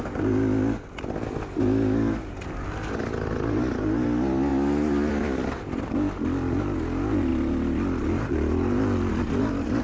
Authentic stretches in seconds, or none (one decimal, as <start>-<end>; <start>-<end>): 0.0-9.8